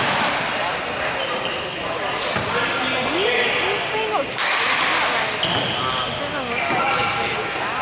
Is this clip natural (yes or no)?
yes